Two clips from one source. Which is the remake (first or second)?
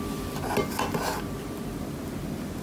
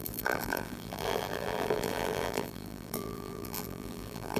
second